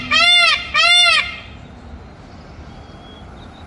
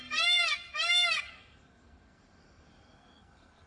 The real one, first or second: first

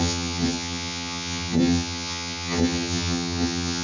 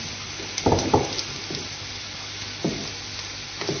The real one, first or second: second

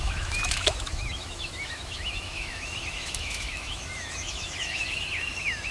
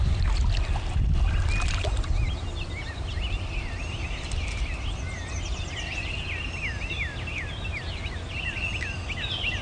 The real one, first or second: second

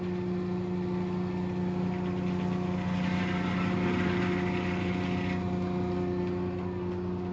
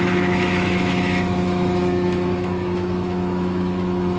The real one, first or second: first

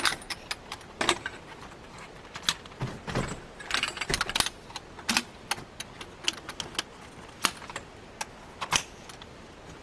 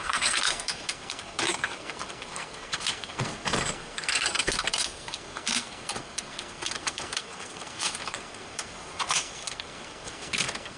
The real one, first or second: first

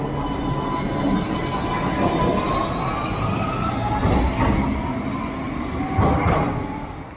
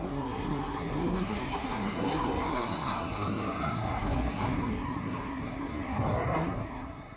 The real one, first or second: first